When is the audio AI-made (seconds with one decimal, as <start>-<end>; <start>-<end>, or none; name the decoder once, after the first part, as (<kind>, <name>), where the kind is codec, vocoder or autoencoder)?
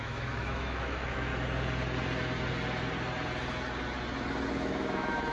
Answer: 0.0-1.3 (autoencoder, DAC-VAE); 4.5-5.3